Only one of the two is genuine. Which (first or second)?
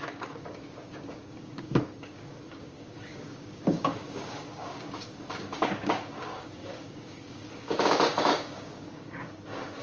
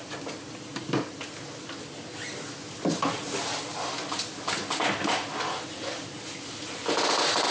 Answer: second